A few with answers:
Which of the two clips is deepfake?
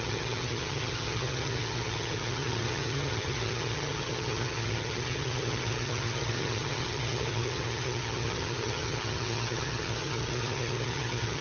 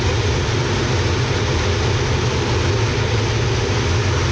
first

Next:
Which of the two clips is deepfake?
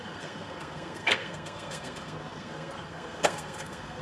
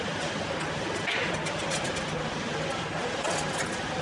first